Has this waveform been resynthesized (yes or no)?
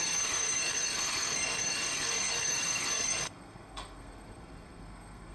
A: yes